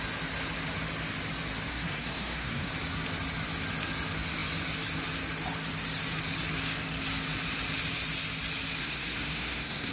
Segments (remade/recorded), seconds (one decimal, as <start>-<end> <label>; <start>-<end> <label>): 0.0-1.7 recorded; 1.7-2.7 remade; 2.7-8.8 recorded; 8.8-9.9 remade